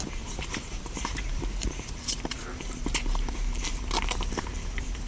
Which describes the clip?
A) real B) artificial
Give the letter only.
B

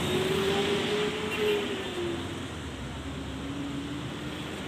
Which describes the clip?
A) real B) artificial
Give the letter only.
A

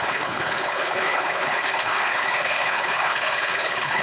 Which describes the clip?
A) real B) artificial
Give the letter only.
B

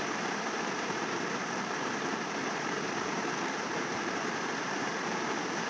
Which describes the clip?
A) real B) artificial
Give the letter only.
B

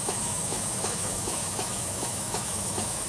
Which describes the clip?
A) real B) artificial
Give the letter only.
B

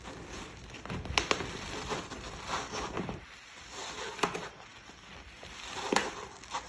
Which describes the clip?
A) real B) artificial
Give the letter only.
A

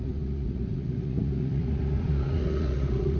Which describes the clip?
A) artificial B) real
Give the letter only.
A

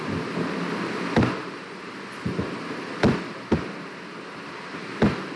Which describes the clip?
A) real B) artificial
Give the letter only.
A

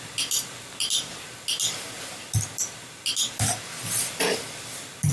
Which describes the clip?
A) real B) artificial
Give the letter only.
A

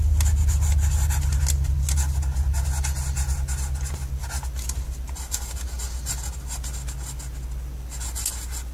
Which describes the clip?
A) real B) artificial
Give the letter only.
A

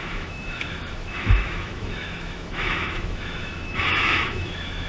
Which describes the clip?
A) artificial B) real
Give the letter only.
A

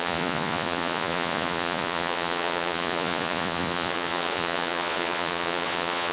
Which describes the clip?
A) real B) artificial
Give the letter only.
B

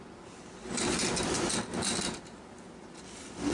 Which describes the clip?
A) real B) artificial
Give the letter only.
A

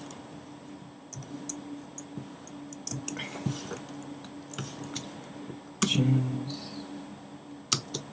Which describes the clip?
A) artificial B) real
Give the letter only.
B